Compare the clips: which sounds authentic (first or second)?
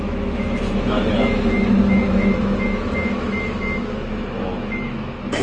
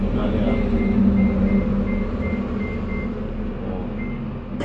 second